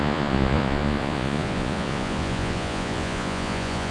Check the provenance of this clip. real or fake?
fake